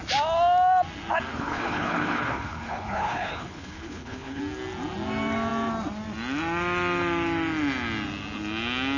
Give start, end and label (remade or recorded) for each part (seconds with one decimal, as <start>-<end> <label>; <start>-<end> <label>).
0.0-1.3 recorded; 1.3-4.4 remade; 4.4-9.0 recorded

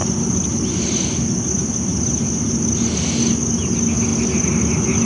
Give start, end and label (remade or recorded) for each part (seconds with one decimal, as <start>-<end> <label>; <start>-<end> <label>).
0.0-5.1 recorded

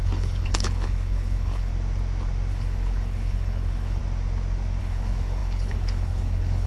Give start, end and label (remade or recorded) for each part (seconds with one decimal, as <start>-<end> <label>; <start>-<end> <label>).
0.0-1.7 remade; 1.7-2.5 recorded; 2.5-4.0 remade; 4.0-4.8 recorded; 4.8-6.7 remade

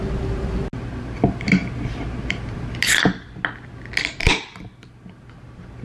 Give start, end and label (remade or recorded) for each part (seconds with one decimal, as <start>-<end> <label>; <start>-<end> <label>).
0.0-5.8 recorded

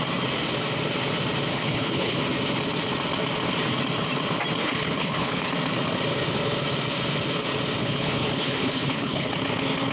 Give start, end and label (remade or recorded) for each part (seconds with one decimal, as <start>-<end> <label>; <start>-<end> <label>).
0.0-1.5 recorded; 1.5-2.2 remade; 2.2-4.6 recorded; 4.6-5.5 remade; 5.5-7.8 recorded; 7.8-9.3 remade; 9.3-9.9 recorded